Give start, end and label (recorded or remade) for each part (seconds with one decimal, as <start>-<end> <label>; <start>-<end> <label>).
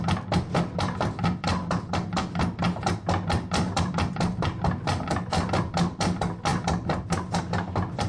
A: 0.0-8.1 recorded